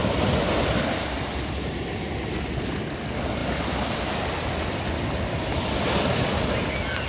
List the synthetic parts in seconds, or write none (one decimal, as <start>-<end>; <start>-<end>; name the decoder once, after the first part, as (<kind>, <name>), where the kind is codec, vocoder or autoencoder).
none